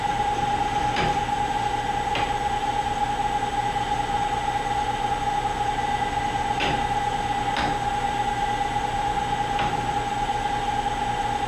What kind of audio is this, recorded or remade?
recorded